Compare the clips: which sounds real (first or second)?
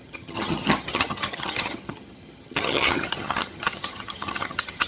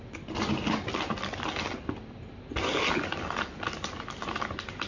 second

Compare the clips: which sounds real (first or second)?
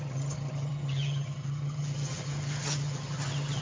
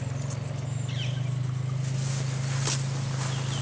second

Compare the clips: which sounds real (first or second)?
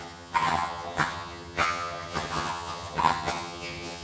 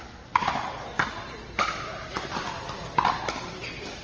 second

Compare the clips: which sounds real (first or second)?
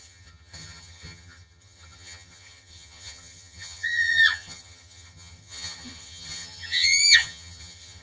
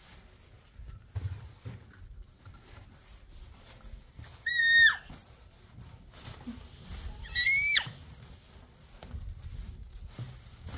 second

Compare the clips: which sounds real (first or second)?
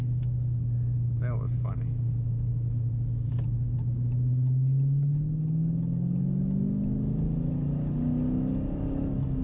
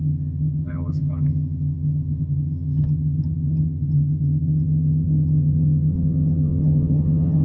first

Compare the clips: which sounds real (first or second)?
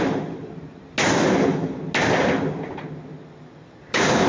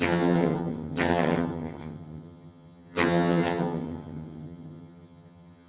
first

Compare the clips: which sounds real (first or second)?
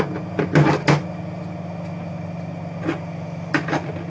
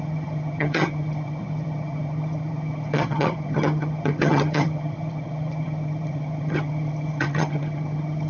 first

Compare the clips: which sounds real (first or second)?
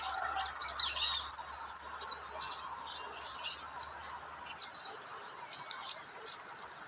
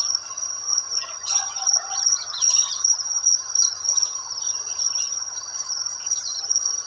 first